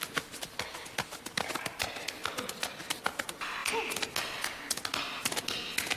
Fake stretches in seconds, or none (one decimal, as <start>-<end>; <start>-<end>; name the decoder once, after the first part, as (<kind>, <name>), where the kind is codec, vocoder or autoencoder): none